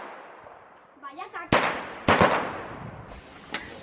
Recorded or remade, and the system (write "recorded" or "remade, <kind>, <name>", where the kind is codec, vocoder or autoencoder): recorded